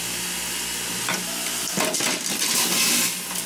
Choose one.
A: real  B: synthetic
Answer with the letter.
A